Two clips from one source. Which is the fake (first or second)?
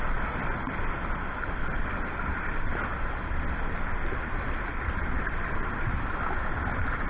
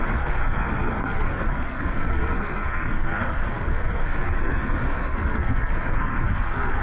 second